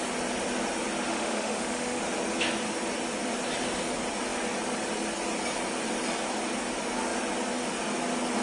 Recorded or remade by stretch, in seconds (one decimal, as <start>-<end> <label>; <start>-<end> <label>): 0.0-1.1 recorded; 1.1-2.0 remade; 2.0-8.4 recorded

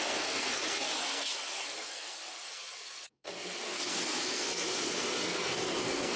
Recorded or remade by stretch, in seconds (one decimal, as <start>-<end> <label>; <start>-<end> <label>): 0.0-6.2 remade

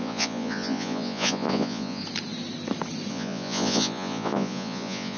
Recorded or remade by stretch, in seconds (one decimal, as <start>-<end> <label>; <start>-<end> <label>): 0.0-2.0 remade; 2.0-3.1 recorded; 3.1-5.2 remade

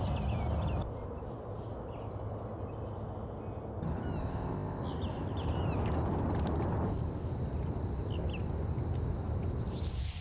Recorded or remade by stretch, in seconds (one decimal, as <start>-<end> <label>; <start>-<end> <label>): 0.0-4.2 recorded; 4.2-4.8 remade; 4.8-10.2 recorded